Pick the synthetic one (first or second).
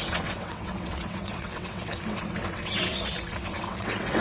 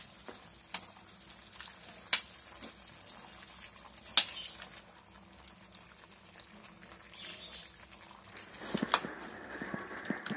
first